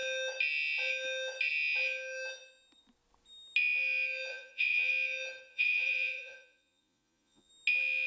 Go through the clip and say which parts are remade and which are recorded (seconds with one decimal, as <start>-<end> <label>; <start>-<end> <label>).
0.0-4.3 recorded; 4.3-4.9 remade; 4.9-5.5 recorded; 5.5-7.5 remade; 7.5-8.1 recorded